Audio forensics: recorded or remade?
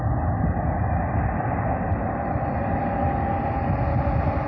recorded